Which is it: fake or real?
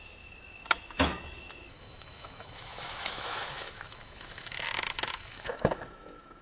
fake